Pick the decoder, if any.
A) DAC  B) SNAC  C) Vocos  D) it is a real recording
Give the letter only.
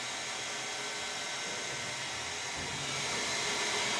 D